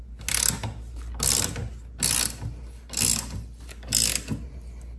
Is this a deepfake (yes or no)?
no